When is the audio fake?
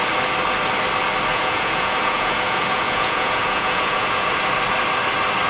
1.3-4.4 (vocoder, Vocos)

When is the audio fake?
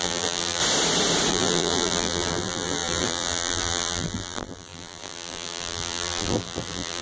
0.0-0.6 (vocoder, BigVGAN v2); 1.3-7.0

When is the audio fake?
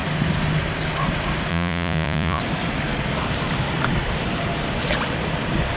1.5-2.4 (vocoder, Vocos)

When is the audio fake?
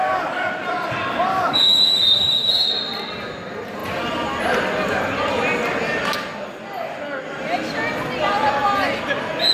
0.0-0.5 (codec, DAC); 1.3-2.7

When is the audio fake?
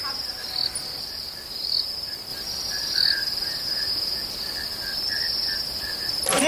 none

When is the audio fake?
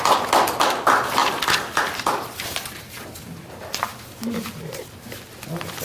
1.2-3.2 (vocoder, BigVGAN v2)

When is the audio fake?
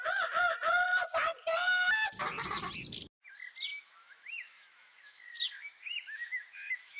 3.7-7.0 (autoencoder, DAC-VAE)